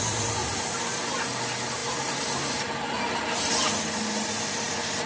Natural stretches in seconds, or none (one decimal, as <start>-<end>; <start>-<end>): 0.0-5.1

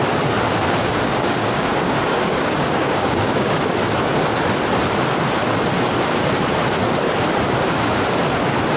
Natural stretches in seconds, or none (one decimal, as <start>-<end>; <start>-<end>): 0.0-0.8; 3.6-8.8

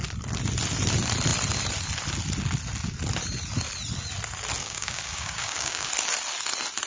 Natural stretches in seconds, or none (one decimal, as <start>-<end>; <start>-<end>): 0.0-4.6; 5.9-6.9

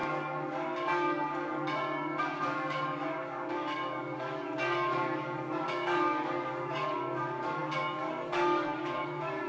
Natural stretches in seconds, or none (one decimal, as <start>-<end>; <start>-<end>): none

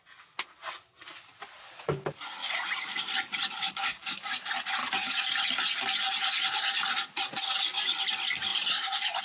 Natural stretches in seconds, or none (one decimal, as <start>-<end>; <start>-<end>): 0.0-3.7; 4.3-9.2

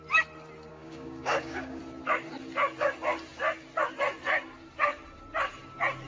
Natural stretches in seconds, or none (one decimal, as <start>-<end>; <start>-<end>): 0.0-0.7; 1.8-6.1

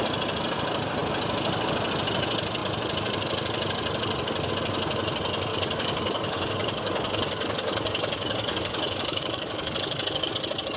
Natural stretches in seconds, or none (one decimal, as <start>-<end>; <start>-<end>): 0.0-5.5; 10.3-10.8

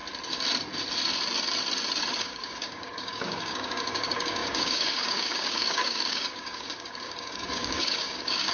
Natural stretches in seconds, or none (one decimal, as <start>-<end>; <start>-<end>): 0.0-2.2